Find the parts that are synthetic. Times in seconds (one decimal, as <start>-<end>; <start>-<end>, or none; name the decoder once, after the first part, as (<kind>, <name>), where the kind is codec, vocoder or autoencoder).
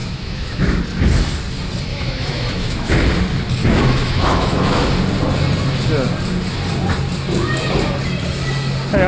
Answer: 0.0-0.8 (autoencoder, DAC-VAE); 1.9-2.9; 3.6-4.9